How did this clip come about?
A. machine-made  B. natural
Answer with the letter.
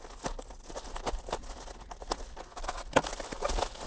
B